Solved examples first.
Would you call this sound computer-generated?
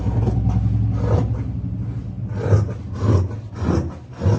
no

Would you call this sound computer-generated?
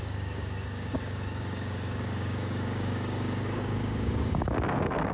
yes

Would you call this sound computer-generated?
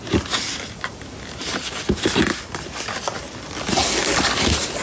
no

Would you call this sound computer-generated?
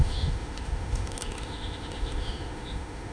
yes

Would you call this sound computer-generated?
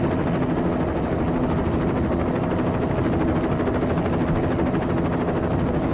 no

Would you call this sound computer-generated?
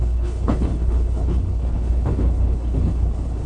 yes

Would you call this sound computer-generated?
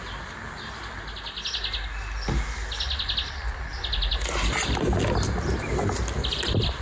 no